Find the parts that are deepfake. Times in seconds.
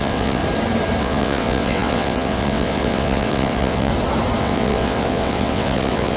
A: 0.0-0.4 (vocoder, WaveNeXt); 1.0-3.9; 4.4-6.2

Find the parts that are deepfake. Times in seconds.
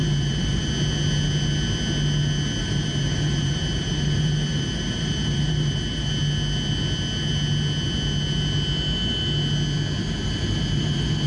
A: 0.0-0.7 (vocoder, BigVGAN v2); 2.6-6.1; 10.0-11.3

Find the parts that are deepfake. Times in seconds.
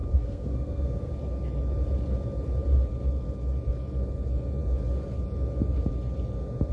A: 0.0-1.1 (codec, SNAC)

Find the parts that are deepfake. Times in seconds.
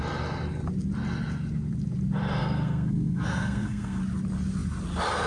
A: 2.4-4.0 (codec, SNAC)